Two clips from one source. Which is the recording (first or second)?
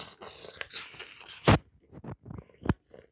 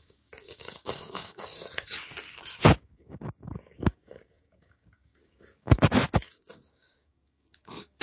first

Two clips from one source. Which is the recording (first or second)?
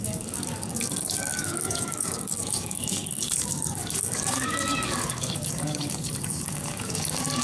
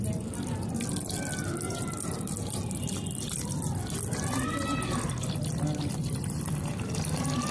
second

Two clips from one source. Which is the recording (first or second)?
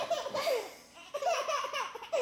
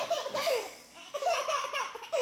first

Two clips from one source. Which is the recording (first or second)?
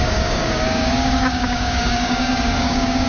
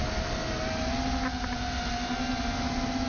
second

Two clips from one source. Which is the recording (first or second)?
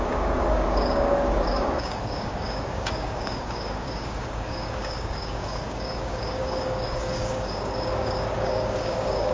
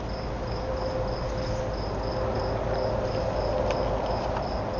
second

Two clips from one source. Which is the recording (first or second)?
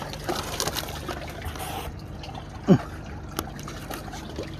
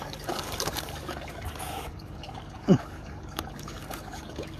first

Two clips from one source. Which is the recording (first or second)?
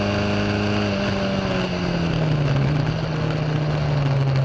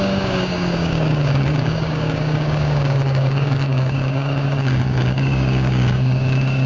first